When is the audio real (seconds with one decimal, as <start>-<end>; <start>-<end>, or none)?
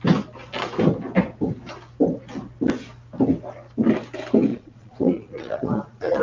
0.0-4.5